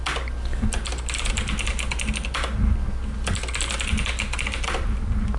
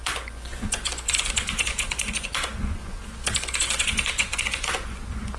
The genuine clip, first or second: first